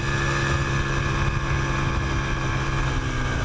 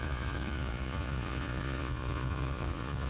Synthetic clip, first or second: second